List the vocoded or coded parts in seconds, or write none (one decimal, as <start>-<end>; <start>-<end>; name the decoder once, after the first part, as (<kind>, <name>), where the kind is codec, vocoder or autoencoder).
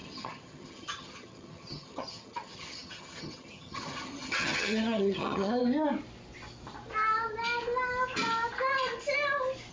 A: 0.0-5.6 (vocoder, HiFi-GAN)